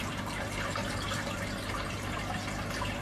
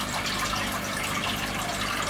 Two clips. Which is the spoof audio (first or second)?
first